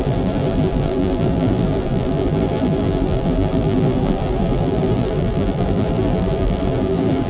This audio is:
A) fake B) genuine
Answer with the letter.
A